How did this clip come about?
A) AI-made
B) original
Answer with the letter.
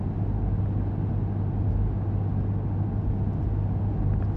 B